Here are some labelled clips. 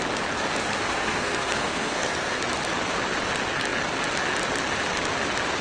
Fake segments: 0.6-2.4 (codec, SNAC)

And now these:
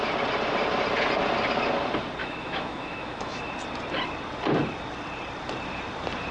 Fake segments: 2.2-3.5 (autoencoder, DAC-VAE)